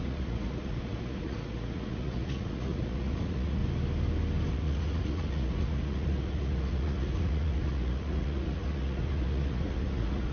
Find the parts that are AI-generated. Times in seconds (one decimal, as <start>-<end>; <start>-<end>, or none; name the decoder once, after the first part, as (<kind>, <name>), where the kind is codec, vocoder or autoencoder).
0.0-3.6 (vocoder, Vocos); 4.5-10.3